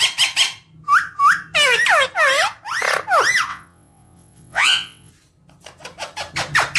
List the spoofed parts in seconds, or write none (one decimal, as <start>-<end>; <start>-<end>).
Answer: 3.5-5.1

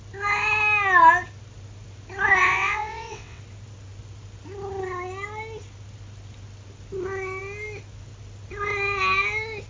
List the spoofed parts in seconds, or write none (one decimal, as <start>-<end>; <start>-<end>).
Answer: 2.4-3.4

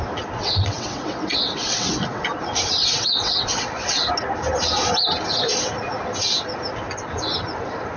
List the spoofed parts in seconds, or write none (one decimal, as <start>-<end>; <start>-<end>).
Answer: 0.4-2.2; 2.8-4.1

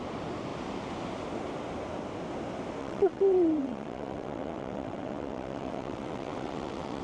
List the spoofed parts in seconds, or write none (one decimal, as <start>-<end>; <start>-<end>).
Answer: 2.8-7.0